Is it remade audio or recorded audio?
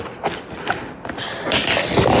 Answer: recorded